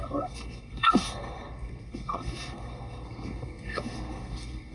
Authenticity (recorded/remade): remade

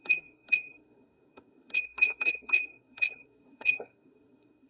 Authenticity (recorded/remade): remade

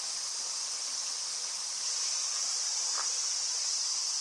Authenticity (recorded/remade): recorded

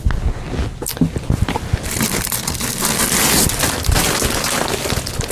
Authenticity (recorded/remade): recorded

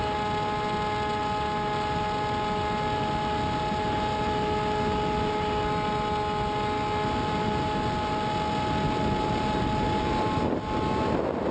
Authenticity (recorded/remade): recorded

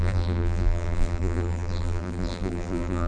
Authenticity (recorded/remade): remade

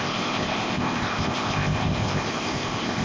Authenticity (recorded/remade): remade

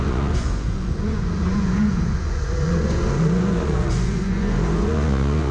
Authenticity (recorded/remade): remade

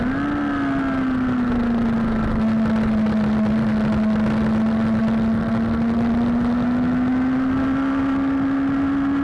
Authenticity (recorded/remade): recorded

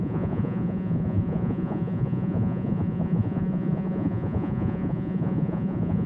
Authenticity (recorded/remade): remade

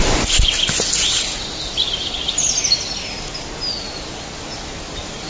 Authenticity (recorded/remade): recorded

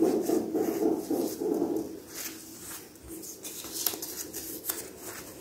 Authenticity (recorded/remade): recorded